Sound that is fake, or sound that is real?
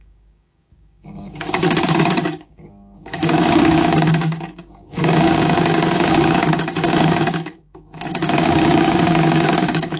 fake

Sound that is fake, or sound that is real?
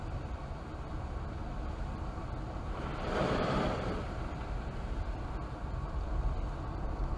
fake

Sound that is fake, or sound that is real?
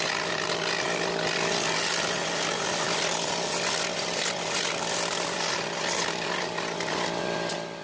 real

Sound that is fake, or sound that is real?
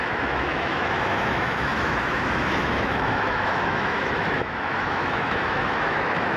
fake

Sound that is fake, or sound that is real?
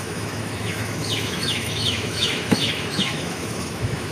fake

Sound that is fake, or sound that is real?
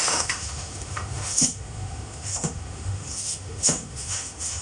fake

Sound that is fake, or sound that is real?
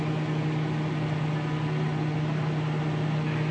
real